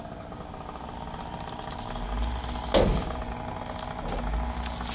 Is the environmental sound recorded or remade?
recorded